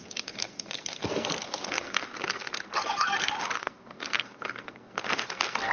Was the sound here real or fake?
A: fake